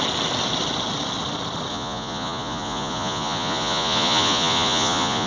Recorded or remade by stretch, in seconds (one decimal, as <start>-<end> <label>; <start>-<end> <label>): 0.0-1.7 recorded; 1.7-5.3 remade

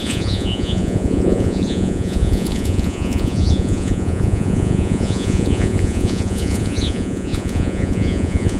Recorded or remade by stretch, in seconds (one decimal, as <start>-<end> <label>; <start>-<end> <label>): 0.0-8.6 remade

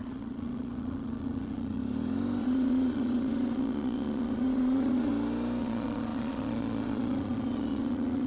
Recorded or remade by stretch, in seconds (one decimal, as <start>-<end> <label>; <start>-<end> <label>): 0.0-1.8 remade; 1.8-2.4 recorded; 2.4-5.1 remade; 5.1-5.6 recorded; 5.6-8.3 remade

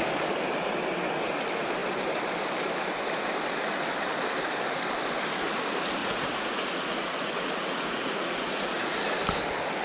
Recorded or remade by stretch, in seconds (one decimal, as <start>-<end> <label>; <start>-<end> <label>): 0.0-6.0 recorded; 6.0-9.0 remade; 9.0-9.8 recorded

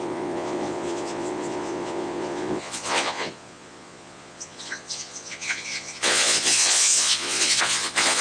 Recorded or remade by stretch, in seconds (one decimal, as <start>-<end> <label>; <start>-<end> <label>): 0.0-8.2 remade

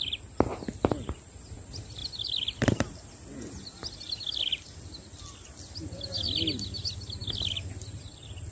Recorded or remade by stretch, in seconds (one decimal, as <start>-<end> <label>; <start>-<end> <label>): 0.0-8.5 recorded

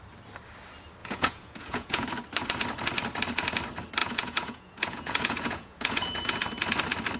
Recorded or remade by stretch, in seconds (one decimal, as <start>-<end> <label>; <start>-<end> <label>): 0.0-1.0 recorded; 1.0-2.1 remade; 2.1-4.0 recorded; 4.0-6.4 remade; 6.4-7.2 recorded

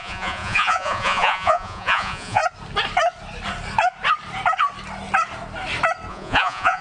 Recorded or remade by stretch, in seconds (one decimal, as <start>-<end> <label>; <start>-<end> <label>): 0.0-2.4 remade; 2.4-6.1 recorded; 6.1-6.8 remade